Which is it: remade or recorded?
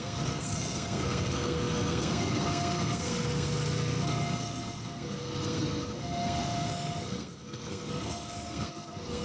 remade